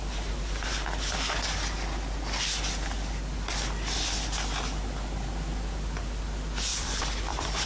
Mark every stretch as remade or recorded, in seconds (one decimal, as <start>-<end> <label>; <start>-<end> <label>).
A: 0.0-6.7 recorded; 6.7-7.7 remade